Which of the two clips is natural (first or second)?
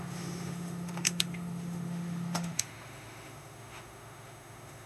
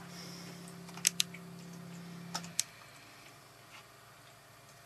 second